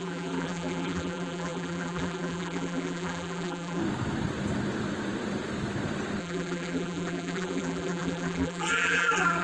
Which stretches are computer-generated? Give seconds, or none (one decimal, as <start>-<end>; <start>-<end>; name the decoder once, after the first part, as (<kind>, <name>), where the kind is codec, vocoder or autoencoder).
0.0-3.8 (vocoder, BigVGAN v2); 6.2-9.4